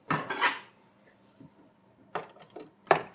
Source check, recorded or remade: remade